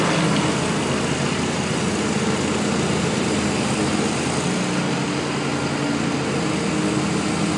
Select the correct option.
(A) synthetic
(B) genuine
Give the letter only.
B